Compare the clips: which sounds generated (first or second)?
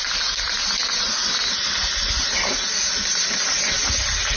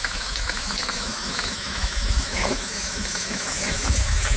second